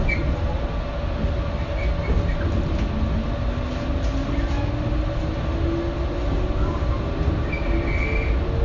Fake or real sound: real